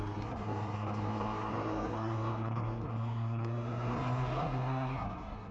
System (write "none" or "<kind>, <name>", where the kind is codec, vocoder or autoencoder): codec, SNAC